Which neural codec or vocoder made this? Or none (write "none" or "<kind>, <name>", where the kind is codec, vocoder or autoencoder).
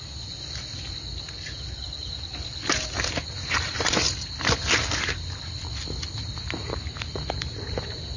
none